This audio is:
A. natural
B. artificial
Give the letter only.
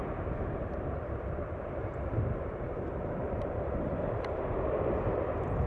B